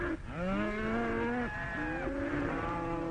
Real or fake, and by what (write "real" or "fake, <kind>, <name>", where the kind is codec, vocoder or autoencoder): real